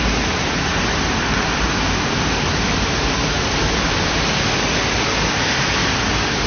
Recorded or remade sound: recorded